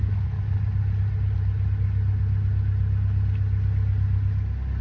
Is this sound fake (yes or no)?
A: no